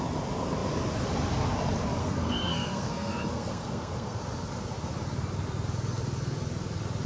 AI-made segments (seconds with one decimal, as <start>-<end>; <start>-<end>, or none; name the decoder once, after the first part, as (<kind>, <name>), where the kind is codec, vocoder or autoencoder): 2.0-4.2 (codec, SNAC)